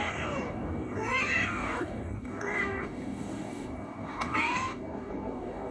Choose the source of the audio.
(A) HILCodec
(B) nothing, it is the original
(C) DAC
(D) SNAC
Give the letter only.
C